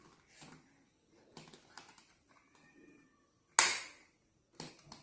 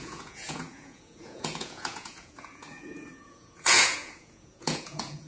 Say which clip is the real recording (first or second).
first